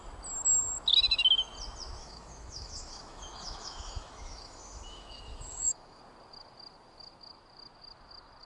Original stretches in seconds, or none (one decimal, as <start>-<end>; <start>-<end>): 0.0-2.0; 6.0-8.4